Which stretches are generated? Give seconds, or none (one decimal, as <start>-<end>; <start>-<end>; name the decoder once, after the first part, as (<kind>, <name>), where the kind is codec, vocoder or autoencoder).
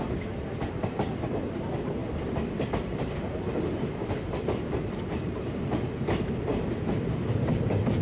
none